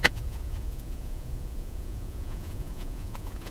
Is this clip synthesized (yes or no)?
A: yes